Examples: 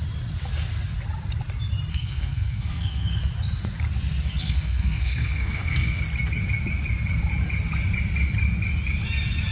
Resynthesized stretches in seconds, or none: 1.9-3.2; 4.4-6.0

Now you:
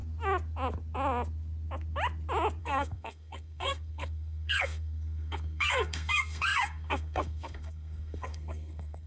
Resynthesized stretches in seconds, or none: 2.6-9.1

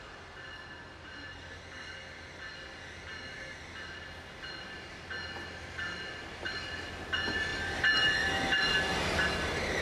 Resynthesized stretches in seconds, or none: none

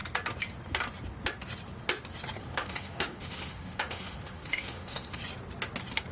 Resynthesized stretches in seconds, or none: 2.4-5.2

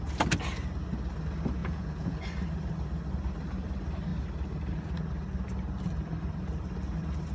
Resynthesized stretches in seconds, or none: 1.6-2.2

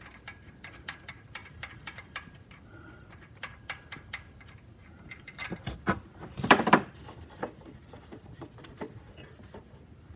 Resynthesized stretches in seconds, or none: 1.4-2.6; 4.8-8.4

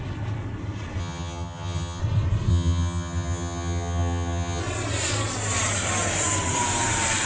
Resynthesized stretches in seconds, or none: 1.0-2.0; 2.5-4.6

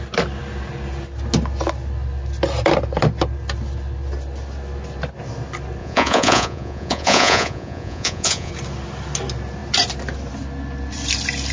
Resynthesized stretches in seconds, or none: 5.8-8.5